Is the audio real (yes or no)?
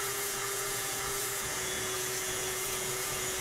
no